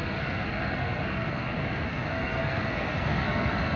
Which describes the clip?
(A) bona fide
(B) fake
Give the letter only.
B